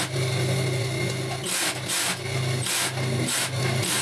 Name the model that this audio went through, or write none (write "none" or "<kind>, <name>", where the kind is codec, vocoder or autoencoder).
none